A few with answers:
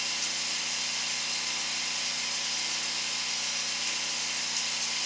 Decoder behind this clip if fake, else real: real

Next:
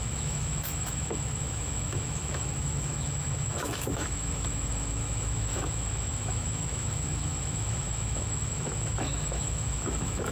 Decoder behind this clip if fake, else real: fake, autoencoder, DAC-VAE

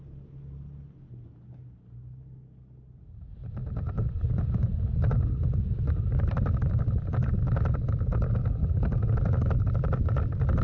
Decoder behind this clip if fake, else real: real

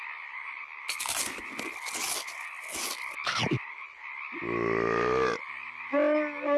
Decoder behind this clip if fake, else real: real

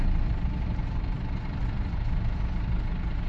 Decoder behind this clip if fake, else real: real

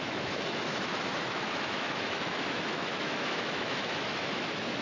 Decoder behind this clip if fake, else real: fake, autoencoder, DAC-VAE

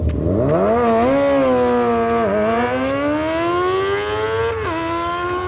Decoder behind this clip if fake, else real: real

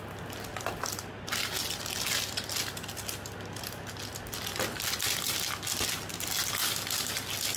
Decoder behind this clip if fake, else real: real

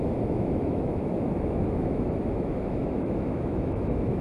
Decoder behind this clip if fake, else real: fake, autoencoder, DAC-VAE